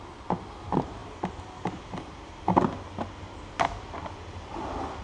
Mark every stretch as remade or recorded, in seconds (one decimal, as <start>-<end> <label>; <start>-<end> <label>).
0.0-5.0 recorded